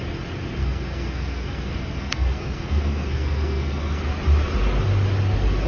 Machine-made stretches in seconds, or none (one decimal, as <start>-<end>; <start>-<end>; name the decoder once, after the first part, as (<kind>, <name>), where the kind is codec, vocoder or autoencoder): 0.6-4.0 (codec, SNAC)